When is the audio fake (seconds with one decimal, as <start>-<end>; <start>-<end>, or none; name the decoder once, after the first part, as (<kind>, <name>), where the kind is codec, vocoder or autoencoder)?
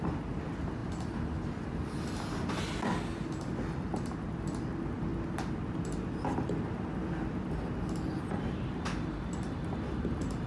none